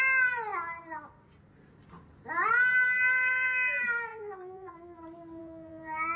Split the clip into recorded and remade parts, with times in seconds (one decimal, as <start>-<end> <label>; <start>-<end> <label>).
0.0-4.1 recorded; 4.1-5.0 remade; 5.0-5.4 recorded; 5.4-6.2 remade